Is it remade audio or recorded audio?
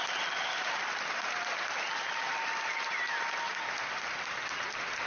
recorded